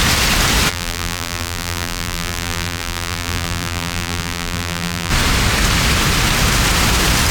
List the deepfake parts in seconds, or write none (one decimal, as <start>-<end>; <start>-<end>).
0.7-5.1